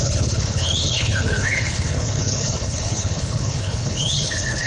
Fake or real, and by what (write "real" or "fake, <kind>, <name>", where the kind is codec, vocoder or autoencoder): fake, codec, HILCodec